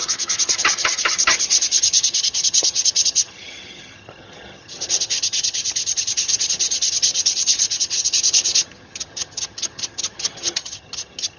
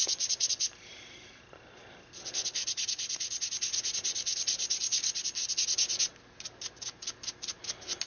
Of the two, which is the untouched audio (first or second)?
second